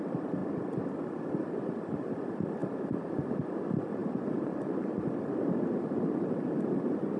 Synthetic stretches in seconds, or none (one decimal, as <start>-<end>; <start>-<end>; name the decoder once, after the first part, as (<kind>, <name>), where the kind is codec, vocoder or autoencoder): none